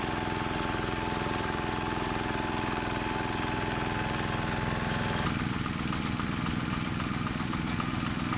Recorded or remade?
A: recorded